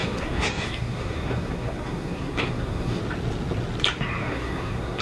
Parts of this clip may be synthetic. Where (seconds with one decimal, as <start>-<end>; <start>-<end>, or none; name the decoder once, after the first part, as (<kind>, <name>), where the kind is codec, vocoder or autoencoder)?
0.0-3.0 (codec, SNAC); 4.2-5.0